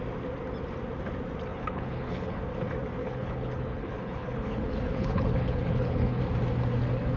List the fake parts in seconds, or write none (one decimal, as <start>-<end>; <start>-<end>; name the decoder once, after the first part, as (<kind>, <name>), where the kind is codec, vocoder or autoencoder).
1.5-2.4 (codec, HILCodec); 3.0-6.2

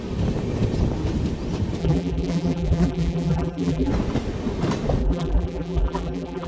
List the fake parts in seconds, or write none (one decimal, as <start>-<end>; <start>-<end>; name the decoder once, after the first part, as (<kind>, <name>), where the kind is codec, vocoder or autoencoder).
1.8-3.9 (vocoder, BigVGAN v2); 5.0-6.5

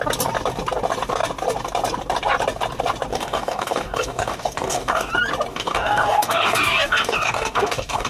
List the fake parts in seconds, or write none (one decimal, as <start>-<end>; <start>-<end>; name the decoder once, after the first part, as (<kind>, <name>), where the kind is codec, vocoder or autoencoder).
3.1-5.1 (codec, DAC); 5.5-8.1

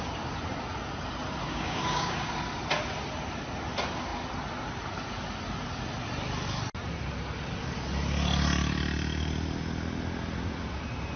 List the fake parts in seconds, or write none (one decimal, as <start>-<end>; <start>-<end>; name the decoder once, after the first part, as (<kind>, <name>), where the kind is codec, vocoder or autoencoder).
1.5-2.3 (codec, DAC)

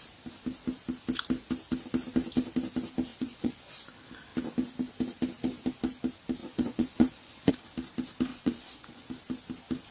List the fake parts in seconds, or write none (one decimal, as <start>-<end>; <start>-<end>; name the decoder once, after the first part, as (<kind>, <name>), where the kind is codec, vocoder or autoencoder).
3.1-3.7 (vocoder, Vocos); 6.4-7.5; 8.3-9.1

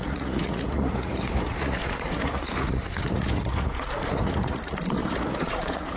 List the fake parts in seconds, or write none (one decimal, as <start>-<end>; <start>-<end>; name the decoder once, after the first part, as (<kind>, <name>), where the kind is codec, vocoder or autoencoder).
0.0-6.0 (vocoder, Vocos)

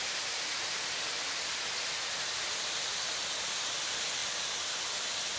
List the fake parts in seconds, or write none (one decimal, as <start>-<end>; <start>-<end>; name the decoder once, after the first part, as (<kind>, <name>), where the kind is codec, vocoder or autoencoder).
none

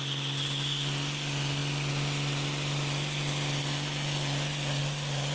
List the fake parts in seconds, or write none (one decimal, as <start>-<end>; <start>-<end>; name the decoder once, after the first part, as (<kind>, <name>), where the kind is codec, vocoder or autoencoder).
none